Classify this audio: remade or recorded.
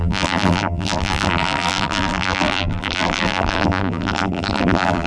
remade